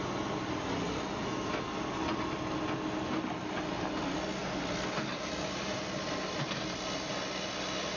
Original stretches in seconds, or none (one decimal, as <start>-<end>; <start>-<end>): 0.0-8.0